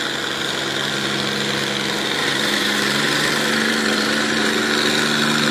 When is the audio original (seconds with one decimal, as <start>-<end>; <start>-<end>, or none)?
0.0-2.2; 4.6-5.5